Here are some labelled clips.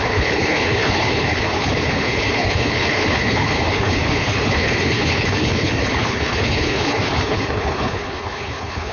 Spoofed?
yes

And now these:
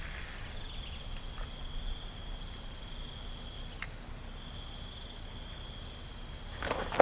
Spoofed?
no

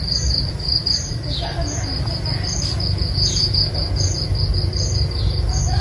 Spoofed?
no